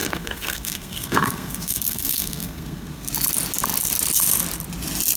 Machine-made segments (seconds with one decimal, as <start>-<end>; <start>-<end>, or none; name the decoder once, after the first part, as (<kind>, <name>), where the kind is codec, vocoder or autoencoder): 0.0-3.1 (codec, SNAC)